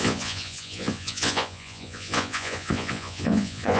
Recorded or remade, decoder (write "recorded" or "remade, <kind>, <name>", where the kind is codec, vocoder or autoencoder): remade, vocoder, Vocos